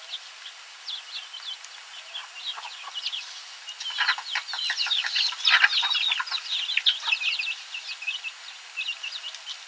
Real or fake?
real